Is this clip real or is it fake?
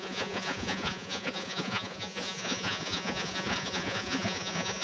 fake